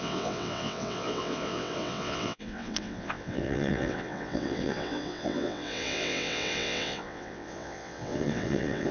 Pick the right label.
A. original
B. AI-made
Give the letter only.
B